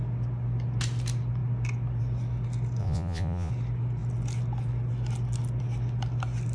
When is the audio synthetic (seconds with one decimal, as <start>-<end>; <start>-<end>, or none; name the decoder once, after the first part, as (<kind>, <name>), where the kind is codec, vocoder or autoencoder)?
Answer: 2.8-3.5 (vocoder, Vocos)